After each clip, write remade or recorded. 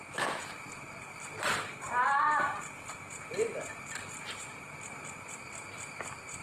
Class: remade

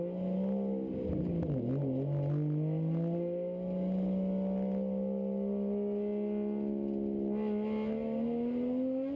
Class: recorded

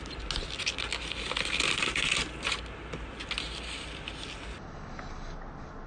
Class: recorded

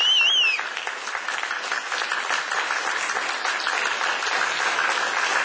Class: recorded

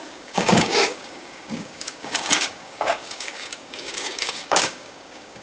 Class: remade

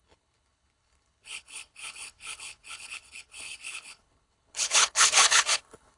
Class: remade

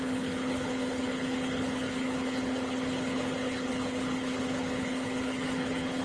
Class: remade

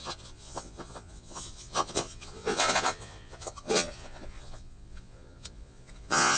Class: remade